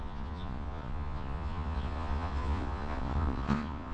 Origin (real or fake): fake